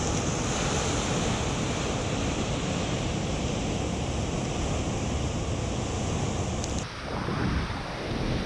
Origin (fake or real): real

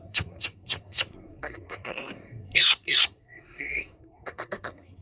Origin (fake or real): fake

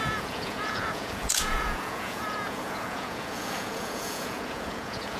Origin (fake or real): fake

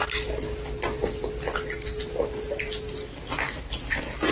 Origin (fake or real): real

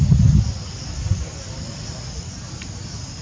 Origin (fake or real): real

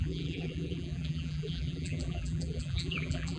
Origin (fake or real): fake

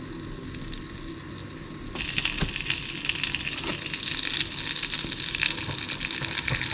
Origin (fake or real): real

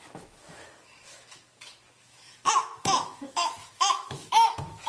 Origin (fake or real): fake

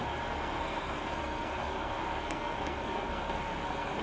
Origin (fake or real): fake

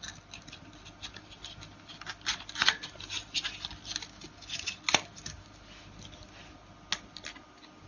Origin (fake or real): real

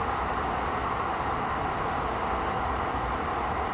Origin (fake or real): real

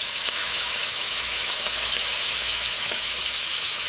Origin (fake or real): fake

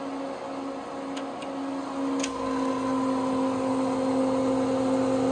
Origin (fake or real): real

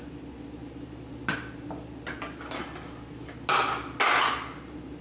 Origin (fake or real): real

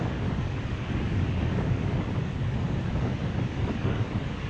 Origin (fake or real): fake